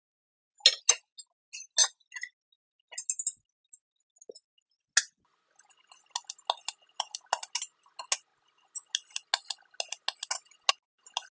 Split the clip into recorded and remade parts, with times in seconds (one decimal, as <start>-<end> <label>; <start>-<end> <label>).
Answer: 0.0-11.4 recorded